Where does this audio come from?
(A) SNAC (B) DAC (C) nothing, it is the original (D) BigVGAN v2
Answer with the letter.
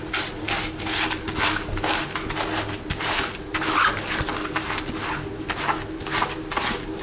C